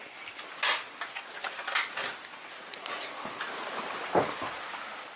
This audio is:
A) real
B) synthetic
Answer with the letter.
A